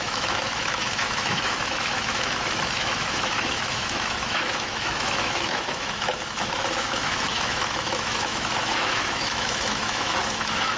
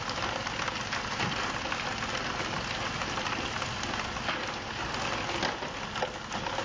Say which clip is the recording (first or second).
second